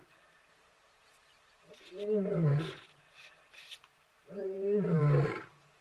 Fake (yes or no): yes